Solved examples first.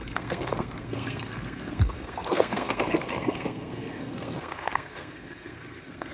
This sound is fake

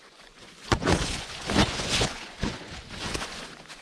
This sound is fake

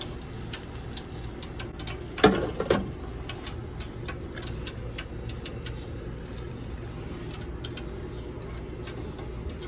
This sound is real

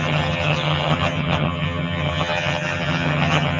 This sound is fake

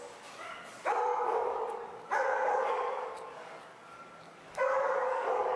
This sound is fake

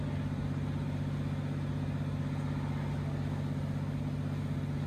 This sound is real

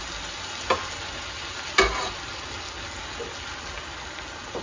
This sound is real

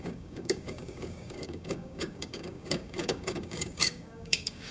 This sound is fake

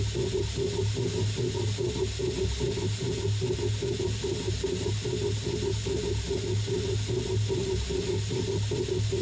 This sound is real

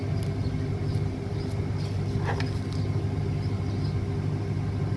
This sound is real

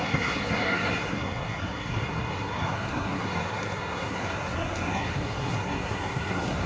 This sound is fake